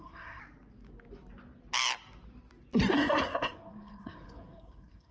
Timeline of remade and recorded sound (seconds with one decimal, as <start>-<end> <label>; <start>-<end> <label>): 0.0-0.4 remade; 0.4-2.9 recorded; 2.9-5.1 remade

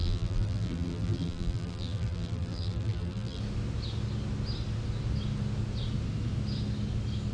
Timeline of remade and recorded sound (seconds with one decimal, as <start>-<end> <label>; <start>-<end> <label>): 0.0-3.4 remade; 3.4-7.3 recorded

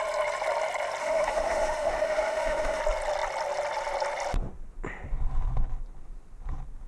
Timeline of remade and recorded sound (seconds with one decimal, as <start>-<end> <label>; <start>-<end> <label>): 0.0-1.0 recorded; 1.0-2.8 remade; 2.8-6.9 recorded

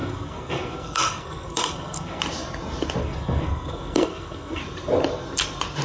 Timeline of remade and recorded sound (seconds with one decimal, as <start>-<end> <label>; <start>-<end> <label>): 0.0-2.2 remade; 2.2-3.0 recorded; 3.0-4.6 remade; 4.6-5.8 recorded

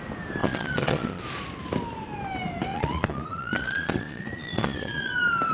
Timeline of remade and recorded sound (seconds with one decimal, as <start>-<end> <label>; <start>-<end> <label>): 0.0-0.4 recorded; 0.4-1.2 remade; 1.2-2.7 recorded; 2.7-5.1 remade; 5.1-5.5 recorded